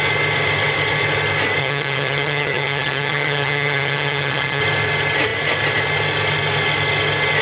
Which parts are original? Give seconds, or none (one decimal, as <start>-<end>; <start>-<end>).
0.0-1.6; 4.6-7.4